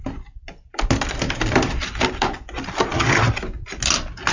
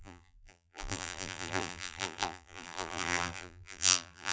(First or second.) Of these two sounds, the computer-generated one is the second